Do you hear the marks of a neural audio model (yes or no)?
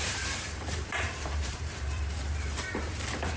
yes